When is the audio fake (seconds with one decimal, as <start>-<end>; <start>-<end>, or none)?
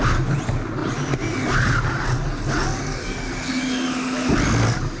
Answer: 3.0-3.5